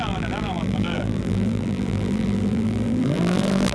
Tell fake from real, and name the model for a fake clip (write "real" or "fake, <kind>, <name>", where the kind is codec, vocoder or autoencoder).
fake, vocoder, BigVGAN v2